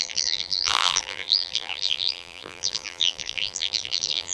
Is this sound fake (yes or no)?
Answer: yes